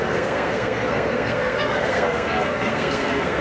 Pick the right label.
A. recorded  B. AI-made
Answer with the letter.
B